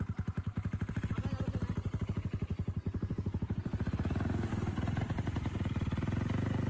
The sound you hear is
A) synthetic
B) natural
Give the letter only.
A